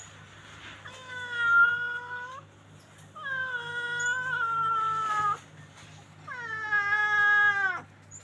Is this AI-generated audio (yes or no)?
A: no